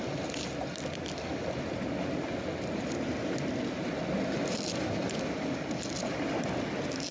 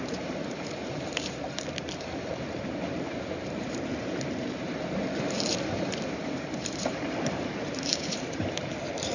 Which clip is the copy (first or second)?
second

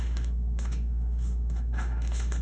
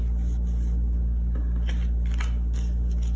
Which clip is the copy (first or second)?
first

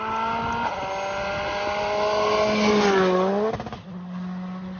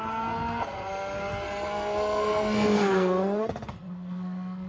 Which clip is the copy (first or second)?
second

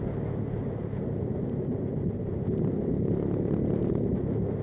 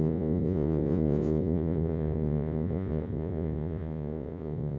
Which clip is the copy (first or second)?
second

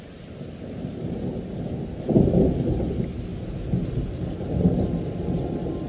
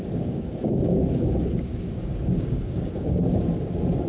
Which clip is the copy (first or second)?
second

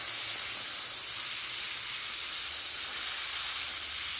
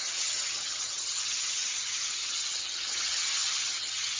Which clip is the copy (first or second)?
second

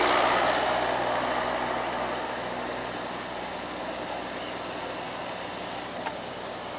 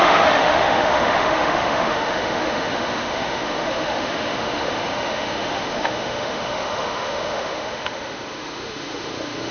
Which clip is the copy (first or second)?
second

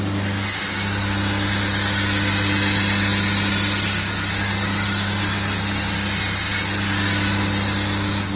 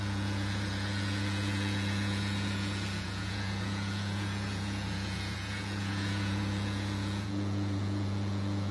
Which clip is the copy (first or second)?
second